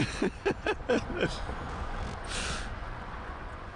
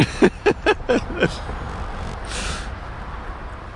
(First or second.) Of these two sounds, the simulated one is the first